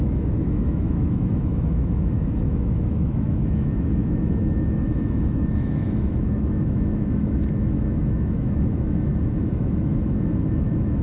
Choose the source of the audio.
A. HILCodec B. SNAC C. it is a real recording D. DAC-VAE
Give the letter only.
D